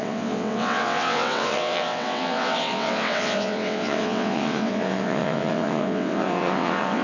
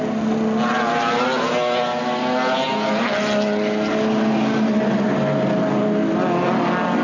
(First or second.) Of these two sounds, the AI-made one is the first